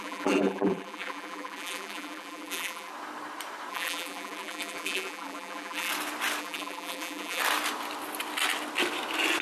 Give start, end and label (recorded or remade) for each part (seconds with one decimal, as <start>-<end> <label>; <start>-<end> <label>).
0.0-2.9 remade; 2.9-3.7 recorded; 3.7-5.9 remade; 5.9-6.4 recorded; 6.4-7.4 remade; 7.4-9.4 recorded